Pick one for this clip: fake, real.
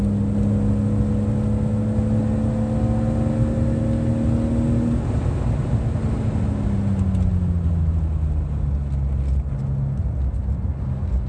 real